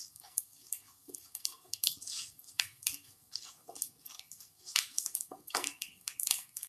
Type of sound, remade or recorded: remade